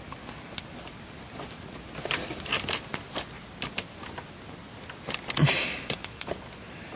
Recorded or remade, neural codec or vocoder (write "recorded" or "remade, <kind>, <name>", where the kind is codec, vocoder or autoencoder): recorded